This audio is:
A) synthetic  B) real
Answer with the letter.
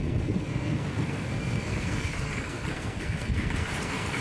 A